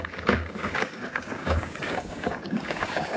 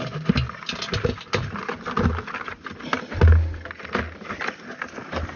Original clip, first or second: second